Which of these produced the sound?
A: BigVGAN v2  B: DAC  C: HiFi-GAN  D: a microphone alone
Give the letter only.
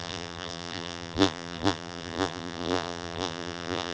A